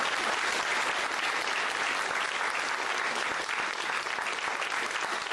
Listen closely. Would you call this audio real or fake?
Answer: real